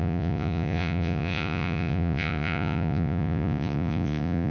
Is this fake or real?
fake